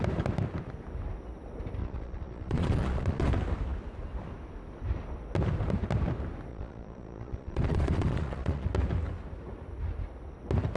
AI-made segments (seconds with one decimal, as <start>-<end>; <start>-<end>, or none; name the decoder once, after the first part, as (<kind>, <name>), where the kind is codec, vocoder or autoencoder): 1.8-3.3 (vocoder, Vocos); 6.5-8.7